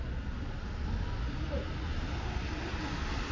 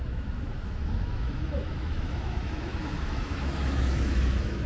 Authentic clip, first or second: first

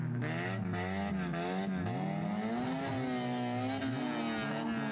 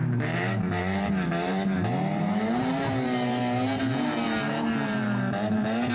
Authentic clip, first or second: first